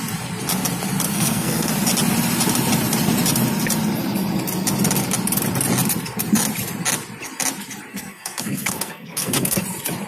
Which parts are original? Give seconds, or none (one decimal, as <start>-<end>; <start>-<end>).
0.0-1.1; 1.7-7.9; 9.6-10.1